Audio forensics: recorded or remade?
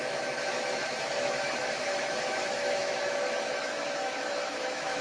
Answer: remade